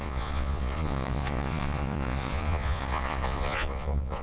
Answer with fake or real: fake